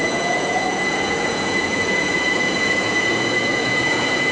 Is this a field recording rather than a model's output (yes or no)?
no